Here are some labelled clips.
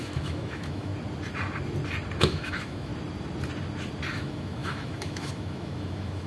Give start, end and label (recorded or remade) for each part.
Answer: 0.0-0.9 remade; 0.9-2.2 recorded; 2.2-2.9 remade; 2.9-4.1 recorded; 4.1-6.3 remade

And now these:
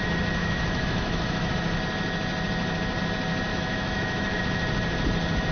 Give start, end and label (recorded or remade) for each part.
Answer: 0.0-0.4 recorded; 0.4-1.5 remade; 1.5-3.5 recorded; 3.5-4.4 remade; 4.4-5.5 recorded

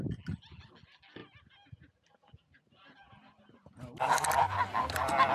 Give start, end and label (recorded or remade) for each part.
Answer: 0.0-5.3 recorded

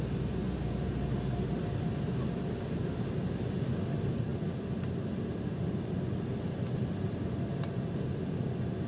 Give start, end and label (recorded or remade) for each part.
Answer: 0.0-8.9 recorded